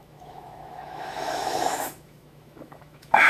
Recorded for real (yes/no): no